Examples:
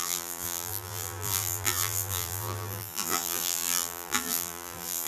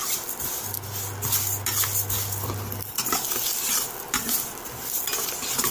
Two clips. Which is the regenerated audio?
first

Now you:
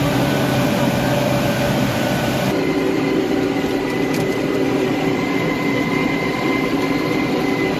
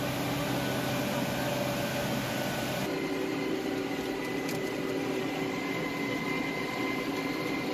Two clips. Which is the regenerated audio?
first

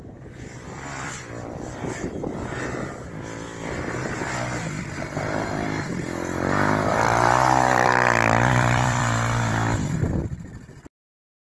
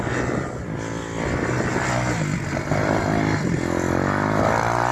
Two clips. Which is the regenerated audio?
first